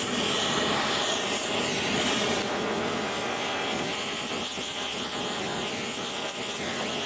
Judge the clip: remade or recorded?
recorded